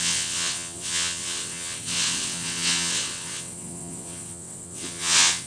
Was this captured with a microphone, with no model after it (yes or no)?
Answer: no